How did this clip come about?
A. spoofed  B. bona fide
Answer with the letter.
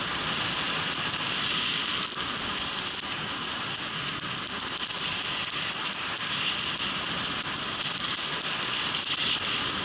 B